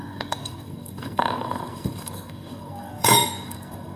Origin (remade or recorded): remade